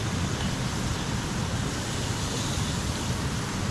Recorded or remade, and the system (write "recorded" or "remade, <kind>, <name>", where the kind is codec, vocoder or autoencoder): recorded